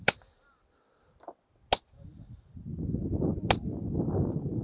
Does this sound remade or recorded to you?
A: recorded